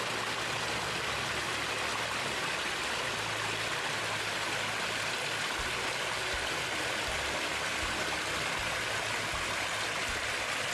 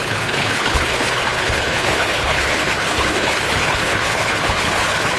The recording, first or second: first